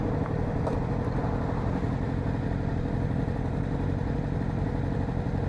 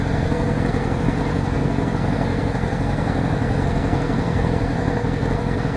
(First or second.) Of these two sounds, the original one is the first